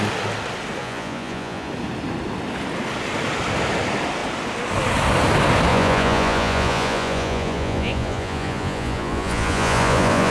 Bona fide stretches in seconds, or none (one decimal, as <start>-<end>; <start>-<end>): 0.0-0.8; 1.7-5.7

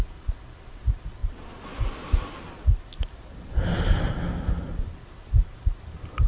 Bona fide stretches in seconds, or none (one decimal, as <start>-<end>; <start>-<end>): 0.0-6.3